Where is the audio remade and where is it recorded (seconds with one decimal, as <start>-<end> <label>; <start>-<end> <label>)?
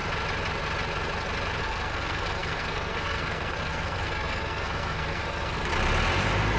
0.0-1.6 recorded; 1.6-5.7 remade; 5.7-6.6 recorded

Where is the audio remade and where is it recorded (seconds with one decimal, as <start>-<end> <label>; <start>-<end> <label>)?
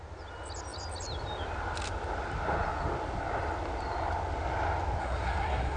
0.0-5.0 recorded; 5.0-5.8 remade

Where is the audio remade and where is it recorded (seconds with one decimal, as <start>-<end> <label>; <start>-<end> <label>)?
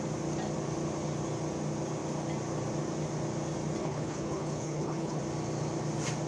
0.0-3.8 recorded; 3.8-5.2 remade; 5.2-6.3 recorded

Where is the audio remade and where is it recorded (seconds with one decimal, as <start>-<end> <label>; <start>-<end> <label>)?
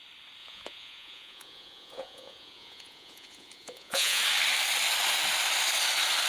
0.0-0.4 recorded; 0.4-4.2 remade; 4.2-6.3 recorded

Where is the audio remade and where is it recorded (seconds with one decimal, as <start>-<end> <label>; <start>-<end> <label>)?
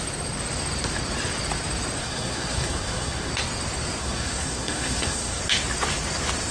0.0-2.0 recorded; 2.0-3.3 remade; 3.3-4.0 recorded; 4.0-5.4 remade; 5.4-6.5 recorded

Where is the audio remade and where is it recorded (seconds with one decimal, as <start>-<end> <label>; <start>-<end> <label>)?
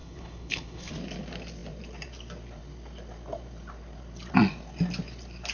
0.0-0.9 remade; 0.9-5.5 recorded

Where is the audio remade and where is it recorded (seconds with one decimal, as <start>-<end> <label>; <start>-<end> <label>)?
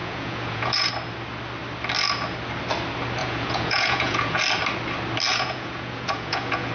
0.0-0.9 remade; 0.9-3.2 recorded; 3.2-4.4 remade; 4.4-5.3 recorded; 5.3-6.7 remade